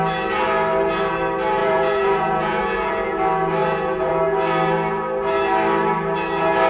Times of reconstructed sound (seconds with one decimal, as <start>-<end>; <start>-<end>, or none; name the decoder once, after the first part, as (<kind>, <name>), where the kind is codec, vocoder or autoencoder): 1.6-2.6 (vocoder, Vocos); 3.6-4.1